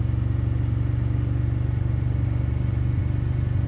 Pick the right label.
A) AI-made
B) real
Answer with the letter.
B